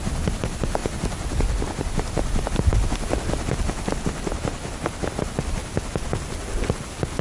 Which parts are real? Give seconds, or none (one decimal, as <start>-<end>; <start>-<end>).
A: 0.0-7.2